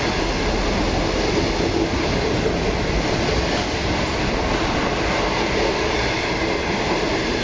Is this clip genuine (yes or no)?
yes